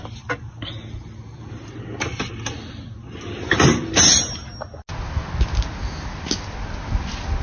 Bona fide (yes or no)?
yes